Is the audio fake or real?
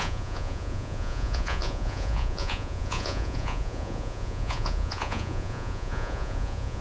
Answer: fake